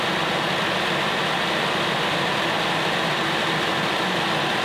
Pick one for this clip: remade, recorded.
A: recorded